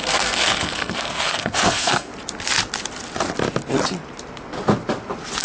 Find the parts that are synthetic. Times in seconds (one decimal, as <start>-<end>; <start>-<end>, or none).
0.0-2.1